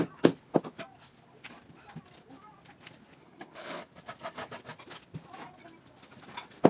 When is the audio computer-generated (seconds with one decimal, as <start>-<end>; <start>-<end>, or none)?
3.2-3.8